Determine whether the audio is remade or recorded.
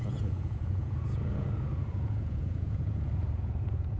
remade